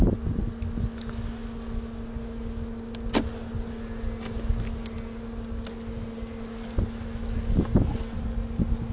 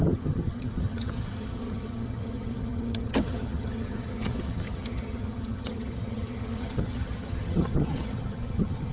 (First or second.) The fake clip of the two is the second